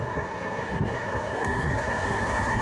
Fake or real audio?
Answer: fake